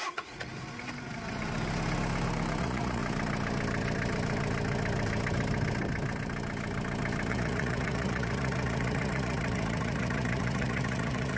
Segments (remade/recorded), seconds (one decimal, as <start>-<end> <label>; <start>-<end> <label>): 0.0-0.5 remade; 0.5-2.6 recorded; 2.6-3.0 remade; 3.0-7.3 recorded; 7.3-11.4 remade